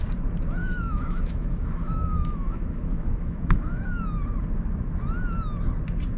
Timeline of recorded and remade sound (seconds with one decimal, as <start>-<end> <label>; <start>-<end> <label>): 0.0-0.6 recorded; 0.6-4.0 remade; 4.0-6.2 recorded